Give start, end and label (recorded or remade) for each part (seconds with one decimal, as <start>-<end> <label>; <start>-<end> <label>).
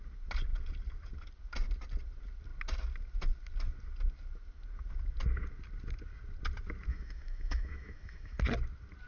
0.0-6.9 recorded; 6.9-8.4 remade; 8.4-9.1 recorded